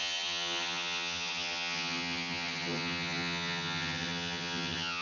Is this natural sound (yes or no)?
no